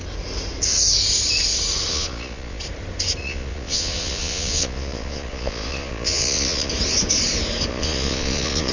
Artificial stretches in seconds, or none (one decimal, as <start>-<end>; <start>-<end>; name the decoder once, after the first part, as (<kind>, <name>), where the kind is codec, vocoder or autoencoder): 1.9-2.6 (vocoder, Vocos); 3.2-6.7; 7.7-8.7